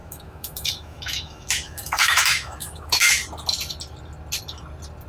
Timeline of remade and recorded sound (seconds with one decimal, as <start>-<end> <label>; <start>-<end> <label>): 0.0-3.1 remade; 3.1-5.1 recorded